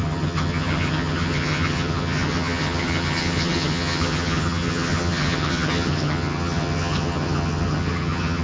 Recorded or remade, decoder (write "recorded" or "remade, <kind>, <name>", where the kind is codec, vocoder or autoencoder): remade, vocoder, HiFi-GAN